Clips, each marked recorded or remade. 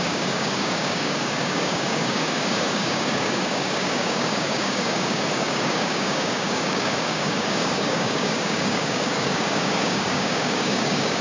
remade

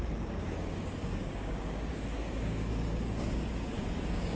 remade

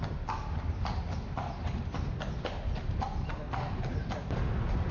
recorded